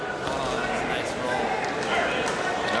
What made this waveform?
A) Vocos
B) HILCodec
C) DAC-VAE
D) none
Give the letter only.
D